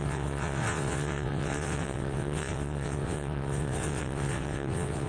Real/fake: fake